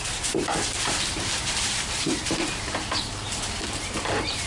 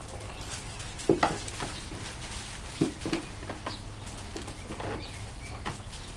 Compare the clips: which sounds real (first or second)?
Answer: second